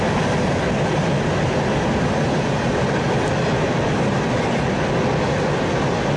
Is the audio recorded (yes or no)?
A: yes